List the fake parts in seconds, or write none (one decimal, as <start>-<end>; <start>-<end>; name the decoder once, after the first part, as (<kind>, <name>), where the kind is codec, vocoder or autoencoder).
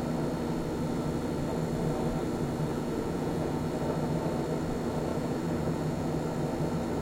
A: 2.7-3.7 (vocoder, Vocos); 5.1-6.1